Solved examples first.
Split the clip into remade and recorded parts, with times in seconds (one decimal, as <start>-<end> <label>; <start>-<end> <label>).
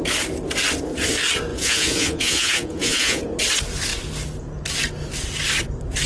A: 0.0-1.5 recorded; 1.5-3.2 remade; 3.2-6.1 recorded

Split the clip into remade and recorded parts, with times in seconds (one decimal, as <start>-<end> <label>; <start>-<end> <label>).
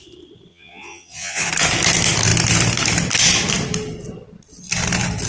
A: 0.0-0.5 recorded; 0.5-1.5 remade; 1.5-5.3 recorded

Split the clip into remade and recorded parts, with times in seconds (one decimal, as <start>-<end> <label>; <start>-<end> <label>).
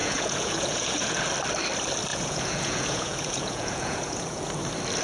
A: 0.0-1.2 remade; 1.2-2.1 recorded; 2.1-4.5 remade; 4.5-5.0 recorded